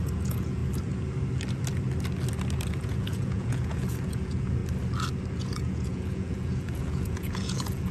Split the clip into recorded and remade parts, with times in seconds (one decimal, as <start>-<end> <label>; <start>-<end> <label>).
0.0-0.6 remade; 0.6-2.7 recorded; 2.7-4.6 remade; 4.6-5.3 recorded; 5.3-7.9 remade